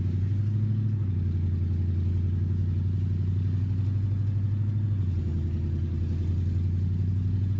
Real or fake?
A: real